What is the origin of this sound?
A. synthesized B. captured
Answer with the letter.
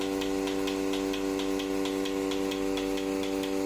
B